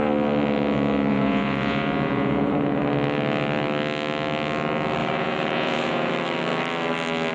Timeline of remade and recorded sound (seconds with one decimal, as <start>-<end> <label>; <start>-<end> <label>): 0.0-1.1 recorded; 1.1-2.8 remade; 2.8-5.0 recorded; 5.0-6.1 remade; 6.1-7.3 recorded